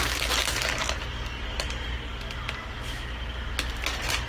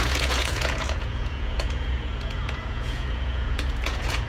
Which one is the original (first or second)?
first